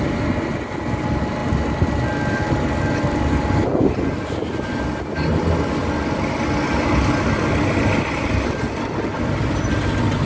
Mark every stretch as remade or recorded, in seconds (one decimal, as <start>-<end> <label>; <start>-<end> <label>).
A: 0.0-10.3 recorded